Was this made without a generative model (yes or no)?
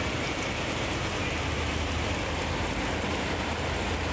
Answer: yes